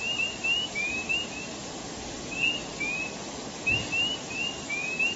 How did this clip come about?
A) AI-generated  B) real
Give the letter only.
B